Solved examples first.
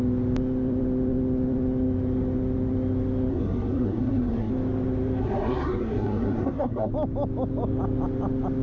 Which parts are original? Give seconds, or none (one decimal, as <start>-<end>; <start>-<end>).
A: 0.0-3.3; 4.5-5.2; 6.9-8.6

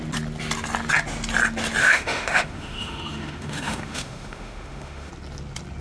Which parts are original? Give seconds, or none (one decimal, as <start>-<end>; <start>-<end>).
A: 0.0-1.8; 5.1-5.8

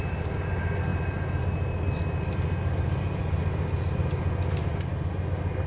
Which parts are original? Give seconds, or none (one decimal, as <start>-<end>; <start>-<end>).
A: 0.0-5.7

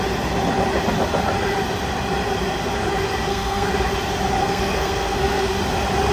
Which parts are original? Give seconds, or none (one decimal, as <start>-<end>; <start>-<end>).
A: 0.0-3.3; 3.8-4.4; 5.6-6.1